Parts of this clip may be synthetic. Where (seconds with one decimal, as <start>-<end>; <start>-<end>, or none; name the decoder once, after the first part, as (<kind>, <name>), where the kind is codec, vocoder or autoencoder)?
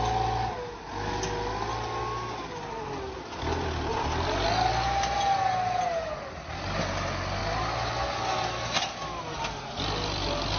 3.9-4.4 (vocoder, BigVGAN v2)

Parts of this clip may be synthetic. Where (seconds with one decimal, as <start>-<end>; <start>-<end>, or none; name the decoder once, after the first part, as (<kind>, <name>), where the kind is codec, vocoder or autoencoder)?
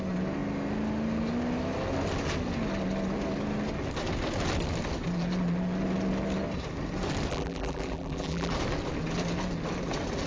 7.3-8.5 (vocoder, BigVGAN v2)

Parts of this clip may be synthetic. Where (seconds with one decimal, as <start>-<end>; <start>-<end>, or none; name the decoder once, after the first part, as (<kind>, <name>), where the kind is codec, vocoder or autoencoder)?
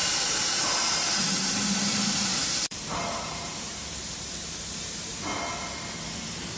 0.0-5.1 (vocoder, BigVGAN v2); 6.0-6.6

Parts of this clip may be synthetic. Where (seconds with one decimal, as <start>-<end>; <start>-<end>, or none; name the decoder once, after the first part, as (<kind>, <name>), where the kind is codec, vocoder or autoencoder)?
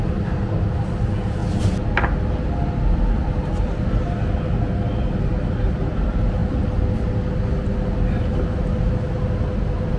none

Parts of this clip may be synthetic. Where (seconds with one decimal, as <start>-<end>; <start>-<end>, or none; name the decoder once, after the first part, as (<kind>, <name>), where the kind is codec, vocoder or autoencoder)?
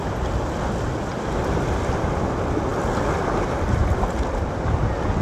1.1-2.2 (vocoder, BigVGAN v2)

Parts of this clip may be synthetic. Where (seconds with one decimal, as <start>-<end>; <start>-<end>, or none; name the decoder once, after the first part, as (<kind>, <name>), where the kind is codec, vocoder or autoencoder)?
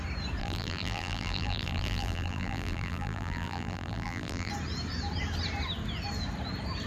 0.4-4.5 (vocoder, BigVGAN v2)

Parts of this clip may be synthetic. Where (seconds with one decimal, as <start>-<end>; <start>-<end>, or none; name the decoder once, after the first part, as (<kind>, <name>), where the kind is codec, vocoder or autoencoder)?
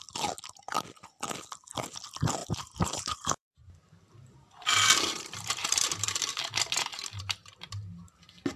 2.4-6.3 (vocoder, BigVGAN v2); 6.9-7.7